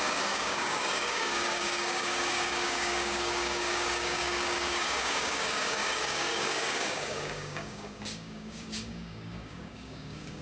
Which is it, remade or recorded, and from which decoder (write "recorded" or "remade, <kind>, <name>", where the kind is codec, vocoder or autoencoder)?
remade, codec, DAC